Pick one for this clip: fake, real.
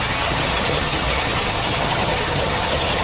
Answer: fake